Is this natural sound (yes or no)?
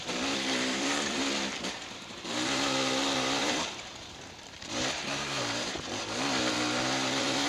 no